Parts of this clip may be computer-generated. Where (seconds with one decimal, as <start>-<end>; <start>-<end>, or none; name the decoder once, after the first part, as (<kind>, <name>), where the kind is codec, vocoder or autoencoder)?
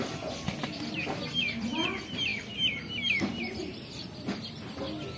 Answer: none